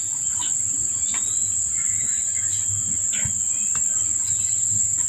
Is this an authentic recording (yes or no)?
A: yes